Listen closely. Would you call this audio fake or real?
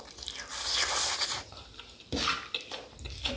real